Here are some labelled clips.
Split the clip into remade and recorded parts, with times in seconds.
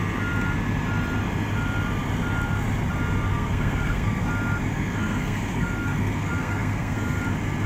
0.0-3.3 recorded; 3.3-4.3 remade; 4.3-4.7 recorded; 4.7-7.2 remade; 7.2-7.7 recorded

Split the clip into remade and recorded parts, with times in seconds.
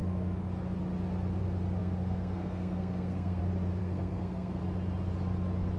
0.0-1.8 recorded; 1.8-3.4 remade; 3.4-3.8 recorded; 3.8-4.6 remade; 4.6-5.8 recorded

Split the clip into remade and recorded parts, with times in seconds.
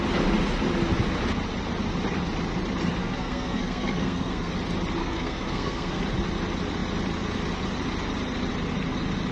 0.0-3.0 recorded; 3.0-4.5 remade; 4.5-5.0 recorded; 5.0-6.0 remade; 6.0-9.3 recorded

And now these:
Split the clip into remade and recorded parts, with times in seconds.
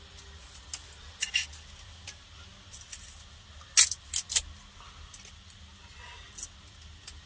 0.0-7.3 recorded